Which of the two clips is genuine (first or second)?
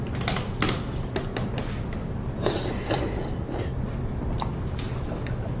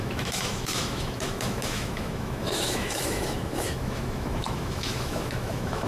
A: first